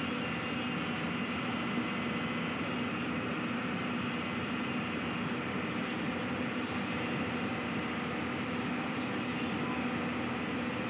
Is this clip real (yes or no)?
yes